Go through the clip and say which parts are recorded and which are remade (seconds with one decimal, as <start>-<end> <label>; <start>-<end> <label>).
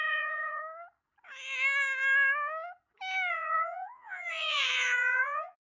0.0-0.6 remade; 0.6-3.3 recorded; 3.3-5.7 remade